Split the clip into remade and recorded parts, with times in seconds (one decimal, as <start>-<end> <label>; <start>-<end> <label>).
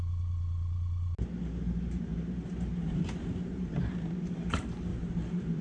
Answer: 0.0-2.1 recorded; 2.1-3.9 remade; 3.9-4.9 recorded; 4.9-5.6 remade